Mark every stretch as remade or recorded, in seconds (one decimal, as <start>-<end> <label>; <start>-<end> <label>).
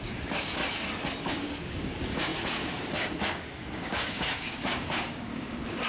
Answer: 0.0-0.6 remade; 0.6-1.2 recorded; 1.2-5.9 remade